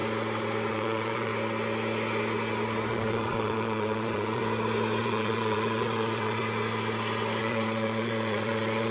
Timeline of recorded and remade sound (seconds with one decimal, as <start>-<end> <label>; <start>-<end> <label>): 0.0-0.7 recorded; 0.7-1.3 remade; 1.3-2.9 recorded; 2.9-4.4 remade; 4.4-5.0 recorded; 5.0-6.4 remade; 6.4-7.4 recorded; 7.4-8.9 remade